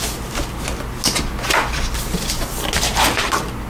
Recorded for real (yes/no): yes